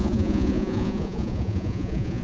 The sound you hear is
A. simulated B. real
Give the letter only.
A